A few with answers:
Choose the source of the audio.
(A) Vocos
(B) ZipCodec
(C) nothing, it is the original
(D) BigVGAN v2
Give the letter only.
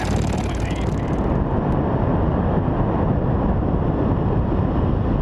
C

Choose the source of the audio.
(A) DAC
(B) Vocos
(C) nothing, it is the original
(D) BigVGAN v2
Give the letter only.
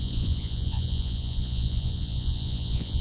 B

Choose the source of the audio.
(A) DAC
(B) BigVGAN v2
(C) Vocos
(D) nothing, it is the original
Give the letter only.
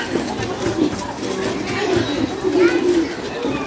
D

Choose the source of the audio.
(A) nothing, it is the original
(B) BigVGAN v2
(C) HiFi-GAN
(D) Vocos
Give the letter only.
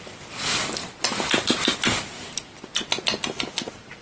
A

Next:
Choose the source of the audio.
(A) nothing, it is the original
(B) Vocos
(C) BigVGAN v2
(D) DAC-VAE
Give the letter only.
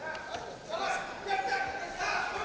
A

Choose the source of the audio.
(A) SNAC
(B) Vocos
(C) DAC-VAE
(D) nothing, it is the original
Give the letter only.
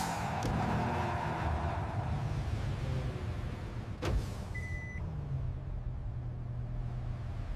D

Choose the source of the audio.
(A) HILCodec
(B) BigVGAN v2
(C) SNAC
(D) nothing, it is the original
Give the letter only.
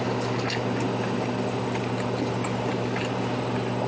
D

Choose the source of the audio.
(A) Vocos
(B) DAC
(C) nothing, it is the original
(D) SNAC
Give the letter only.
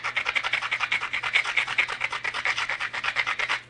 C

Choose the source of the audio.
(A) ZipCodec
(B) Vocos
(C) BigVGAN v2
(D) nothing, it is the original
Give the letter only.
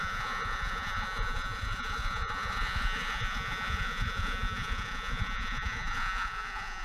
B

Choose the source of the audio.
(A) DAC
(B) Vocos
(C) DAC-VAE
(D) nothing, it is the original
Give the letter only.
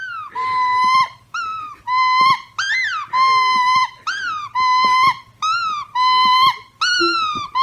D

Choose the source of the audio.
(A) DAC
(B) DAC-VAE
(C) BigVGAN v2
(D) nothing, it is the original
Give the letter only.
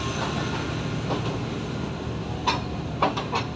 D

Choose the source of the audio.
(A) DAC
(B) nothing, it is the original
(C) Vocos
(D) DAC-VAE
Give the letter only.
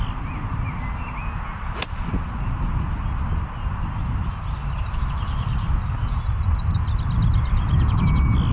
B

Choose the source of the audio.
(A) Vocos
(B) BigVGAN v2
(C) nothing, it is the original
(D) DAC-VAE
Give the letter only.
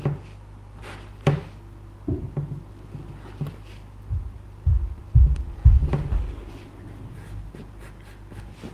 C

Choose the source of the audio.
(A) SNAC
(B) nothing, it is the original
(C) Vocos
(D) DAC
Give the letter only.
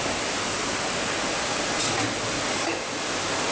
B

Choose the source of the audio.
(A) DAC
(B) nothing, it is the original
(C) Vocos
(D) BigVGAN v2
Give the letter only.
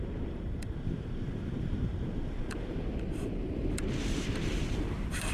D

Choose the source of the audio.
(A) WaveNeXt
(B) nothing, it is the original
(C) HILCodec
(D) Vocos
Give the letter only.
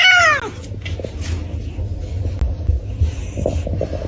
B